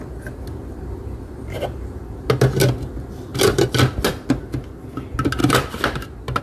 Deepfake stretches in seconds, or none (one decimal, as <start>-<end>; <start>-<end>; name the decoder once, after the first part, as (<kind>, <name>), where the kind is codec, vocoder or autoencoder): none